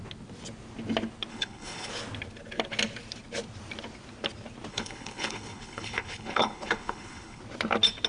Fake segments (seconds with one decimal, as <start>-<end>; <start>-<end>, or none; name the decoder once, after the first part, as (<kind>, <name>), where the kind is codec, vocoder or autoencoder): 1.3-1.9 (codec, HILCodec); 4.7-7.4